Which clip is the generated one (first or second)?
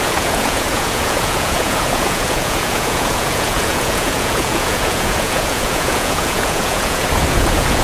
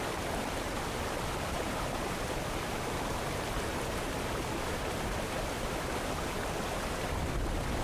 first